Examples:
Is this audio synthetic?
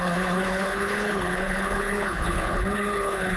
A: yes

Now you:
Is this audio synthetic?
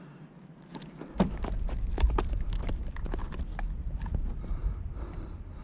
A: no